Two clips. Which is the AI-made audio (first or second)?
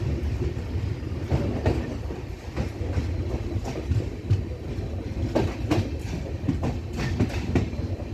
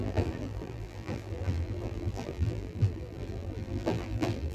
second